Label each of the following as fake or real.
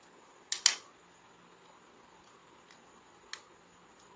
real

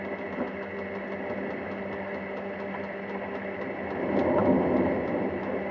real